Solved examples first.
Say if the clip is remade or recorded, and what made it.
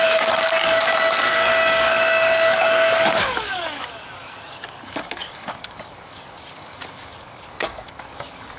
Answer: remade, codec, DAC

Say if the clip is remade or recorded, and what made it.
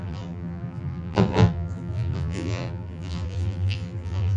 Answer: remade, vocoder, BigVGAN v2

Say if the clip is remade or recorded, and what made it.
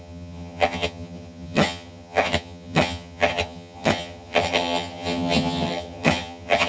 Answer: remade, vocoder, HiFi-GAN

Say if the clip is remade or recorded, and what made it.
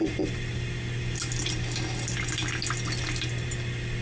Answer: recorded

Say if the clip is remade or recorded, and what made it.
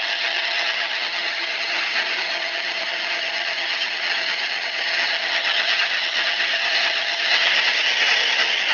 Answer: remade, vocoder, HiFi-GAN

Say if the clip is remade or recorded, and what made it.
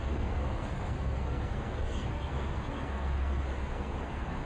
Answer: remade, codec, SNAC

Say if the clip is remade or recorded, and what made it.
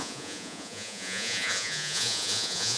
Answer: remade, vocoder, Vocos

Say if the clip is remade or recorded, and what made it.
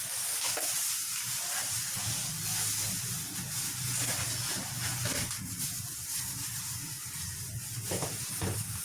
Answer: recorded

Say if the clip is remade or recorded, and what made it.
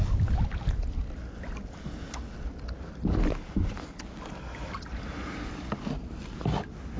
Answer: recorded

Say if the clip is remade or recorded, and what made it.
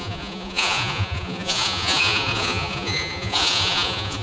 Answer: remade, vocoder, Vocos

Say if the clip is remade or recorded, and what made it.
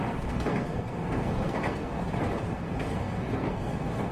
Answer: remade, codec, SNAC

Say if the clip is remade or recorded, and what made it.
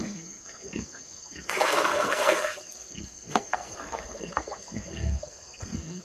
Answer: remade, codec, SNAC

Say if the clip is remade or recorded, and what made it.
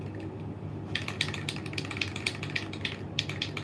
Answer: recorded